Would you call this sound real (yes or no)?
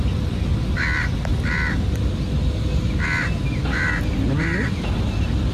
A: yes